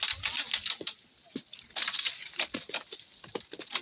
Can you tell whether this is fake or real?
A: real